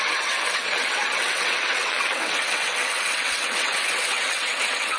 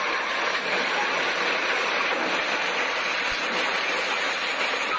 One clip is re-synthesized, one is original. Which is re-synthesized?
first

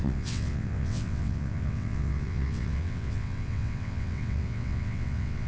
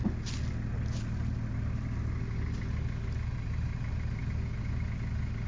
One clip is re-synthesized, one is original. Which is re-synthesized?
first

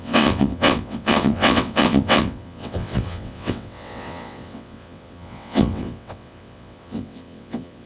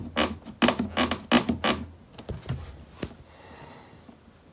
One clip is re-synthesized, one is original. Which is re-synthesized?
first